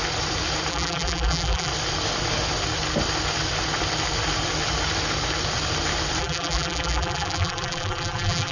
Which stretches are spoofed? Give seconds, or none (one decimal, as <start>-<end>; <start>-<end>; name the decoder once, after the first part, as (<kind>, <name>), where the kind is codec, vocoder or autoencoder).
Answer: 0.7-1.7 (vocoder, BigVGAN v2); 6.2-8.5